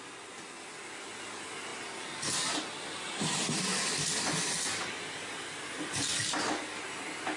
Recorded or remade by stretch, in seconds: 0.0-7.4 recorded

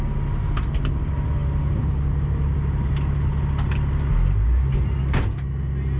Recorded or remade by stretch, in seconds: 0.0-6.0 recorded